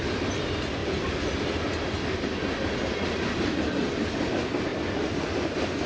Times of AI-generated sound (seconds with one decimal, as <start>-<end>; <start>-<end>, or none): none